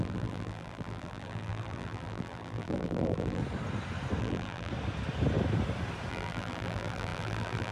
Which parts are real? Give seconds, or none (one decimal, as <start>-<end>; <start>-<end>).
3.4-4.2; 4.7-6.1